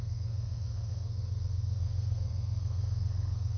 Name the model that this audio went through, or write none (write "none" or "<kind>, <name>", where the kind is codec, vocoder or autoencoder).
codec, SNAC